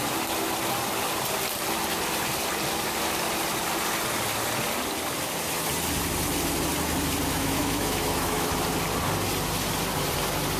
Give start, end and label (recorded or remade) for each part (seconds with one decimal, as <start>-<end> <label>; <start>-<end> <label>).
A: 0.0-7.3 recorded; 7.3-8.5 remade; 8.5-10.6 recorded